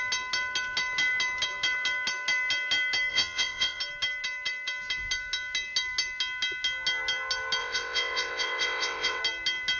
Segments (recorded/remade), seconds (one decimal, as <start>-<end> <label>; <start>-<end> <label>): 0.0-3.1 recorded; 3.1-3.8 remade; 3.8-7.6 recorded; 7.6-9.2 remade; 9.2-9.8 recorded